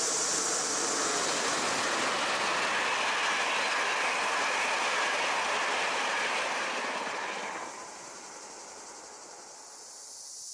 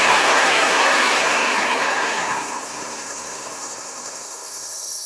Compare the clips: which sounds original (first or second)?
first